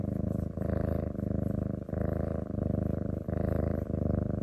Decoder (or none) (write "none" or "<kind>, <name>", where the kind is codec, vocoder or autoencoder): none